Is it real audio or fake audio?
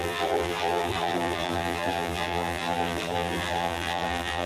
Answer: fake